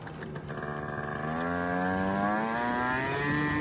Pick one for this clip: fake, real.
real